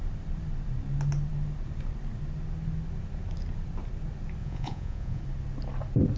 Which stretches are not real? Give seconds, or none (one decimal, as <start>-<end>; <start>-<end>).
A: 4.4-5.2